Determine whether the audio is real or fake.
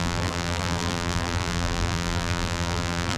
fake